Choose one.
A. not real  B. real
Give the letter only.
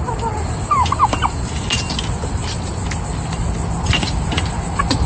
B